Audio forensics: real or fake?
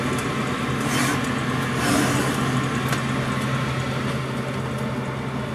real